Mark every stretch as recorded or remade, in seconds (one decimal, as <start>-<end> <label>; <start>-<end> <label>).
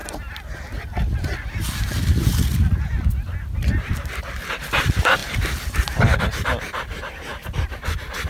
0.0-3.9 recorded; 3.9-8.3 remade